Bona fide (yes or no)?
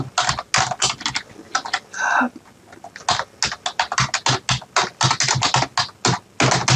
yes